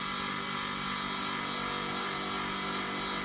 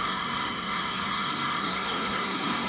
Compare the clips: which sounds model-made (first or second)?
second